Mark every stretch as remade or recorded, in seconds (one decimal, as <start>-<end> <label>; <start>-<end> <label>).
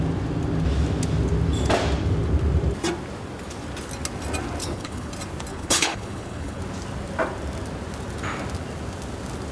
0.0-4.6 recorded; 4.6-5.1 remade; 5.1-5.5 recorded; 5.5-6.6 remade; 6.6-9.5 recorded